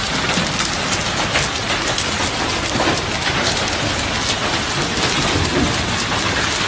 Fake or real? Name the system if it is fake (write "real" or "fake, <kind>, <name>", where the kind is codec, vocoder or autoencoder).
real